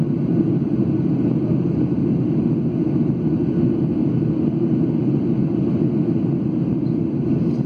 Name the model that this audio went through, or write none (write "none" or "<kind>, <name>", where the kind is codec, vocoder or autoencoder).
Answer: none